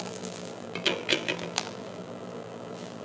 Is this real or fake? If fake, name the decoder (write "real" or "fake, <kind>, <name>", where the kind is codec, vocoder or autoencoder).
fake, vocoder, BigVGAN v2